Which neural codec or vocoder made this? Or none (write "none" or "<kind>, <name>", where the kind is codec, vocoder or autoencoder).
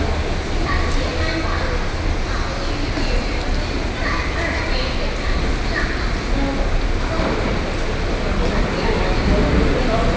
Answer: none